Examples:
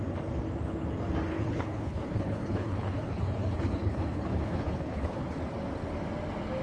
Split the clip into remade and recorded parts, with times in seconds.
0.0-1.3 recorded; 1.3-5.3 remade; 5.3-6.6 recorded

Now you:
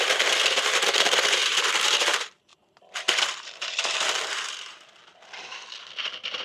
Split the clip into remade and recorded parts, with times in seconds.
0.0-1.4 remade; 1.4-2.0 recorded; 2.0-6.4 remade

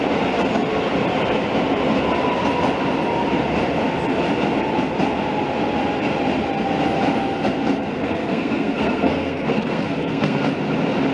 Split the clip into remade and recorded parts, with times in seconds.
0.0-7.8 recorded; 7.8-10.5 remade; 10.5-11.1 recorded

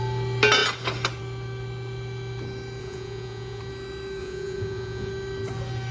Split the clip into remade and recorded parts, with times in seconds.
0.0-2.8 recorded; 2.8-3.6 remade; 3.6-4.2 recorded; 4.2-5.1 remade; 5.1-5.9 recorded